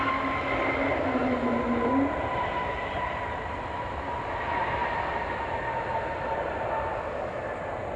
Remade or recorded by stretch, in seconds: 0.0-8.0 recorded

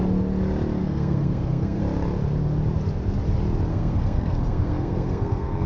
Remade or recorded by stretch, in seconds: 0.0-0.8 recorded; 0.8-1.8 remade; 1.8-3.7 recorded; 3.7-5.7 remade

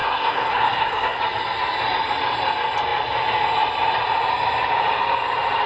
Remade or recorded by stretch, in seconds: 0.0-1.2 remade; 1.2-5.7 recorded

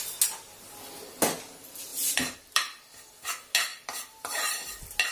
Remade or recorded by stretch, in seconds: 0.0-1.9 recorded; 1.9-3.2 remade; 3.2-3.7 recorded; 3.7-4.5 remade; 4.5-5.1 recorded

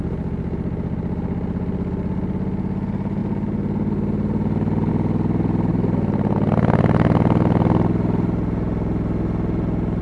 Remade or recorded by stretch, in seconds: 0.0-10.0 recorded

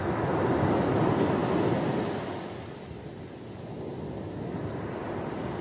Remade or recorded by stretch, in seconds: 0.0-5.6 recorded